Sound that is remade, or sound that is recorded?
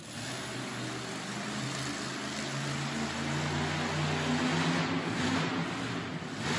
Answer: recorded